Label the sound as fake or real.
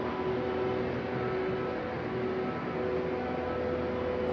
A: real